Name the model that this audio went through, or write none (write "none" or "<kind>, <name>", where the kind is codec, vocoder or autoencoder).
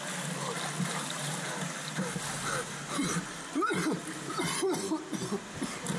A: none